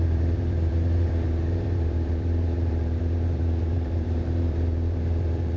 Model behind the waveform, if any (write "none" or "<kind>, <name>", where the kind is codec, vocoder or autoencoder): vocoder, BigVGAN v2